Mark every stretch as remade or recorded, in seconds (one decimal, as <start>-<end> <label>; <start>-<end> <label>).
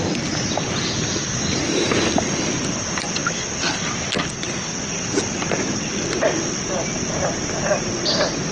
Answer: 0.0-3.2 remade; 3.2-4.2 recorded; 4.2-8.5 remade